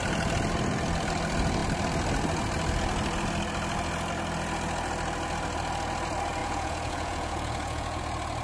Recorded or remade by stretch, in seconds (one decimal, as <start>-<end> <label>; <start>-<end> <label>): 0.0-6.4 recorded; 6.4-8.0 remade; 8.0-8.4 recorded